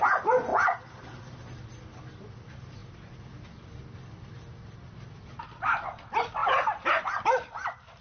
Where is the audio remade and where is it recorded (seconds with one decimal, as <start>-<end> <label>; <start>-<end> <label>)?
0.0-8.0 recorded